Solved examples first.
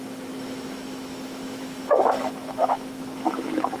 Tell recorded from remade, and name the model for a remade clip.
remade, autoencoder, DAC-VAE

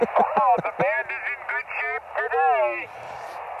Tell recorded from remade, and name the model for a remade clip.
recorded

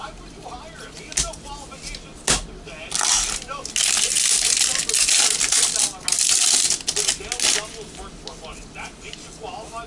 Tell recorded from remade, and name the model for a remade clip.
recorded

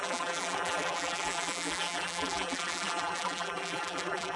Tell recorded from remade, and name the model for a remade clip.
remade, vocoder, BigVGAN v2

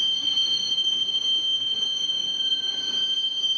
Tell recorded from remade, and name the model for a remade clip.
remade, codec, DAC